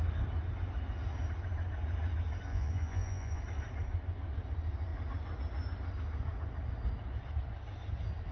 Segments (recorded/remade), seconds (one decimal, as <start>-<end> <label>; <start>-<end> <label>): 0.0-2.5 recorded; 2.5-3.4 remade; 3.4-8.3 recorded